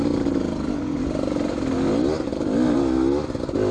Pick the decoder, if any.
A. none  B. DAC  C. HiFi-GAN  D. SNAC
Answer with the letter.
A